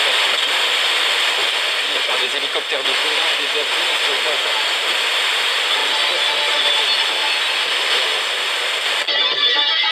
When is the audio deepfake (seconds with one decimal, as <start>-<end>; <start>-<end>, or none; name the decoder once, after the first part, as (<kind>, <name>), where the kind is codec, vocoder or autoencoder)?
1.4-4.4 (vocoder, BigVGAN v2)